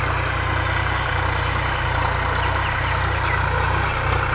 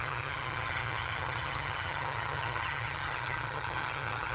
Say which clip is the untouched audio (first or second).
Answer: first